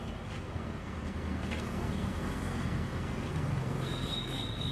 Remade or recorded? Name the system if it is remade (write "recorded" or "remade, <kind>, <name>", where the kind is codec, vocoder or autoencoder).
remade, codec, SNAC